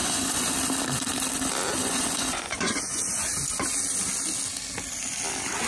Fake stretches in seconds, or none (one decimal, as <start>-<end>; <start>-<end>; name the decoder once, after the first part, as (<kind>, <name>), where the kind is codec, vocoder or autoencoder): 0.0-0.5 (vocoder, Vocos); 1.8-3.2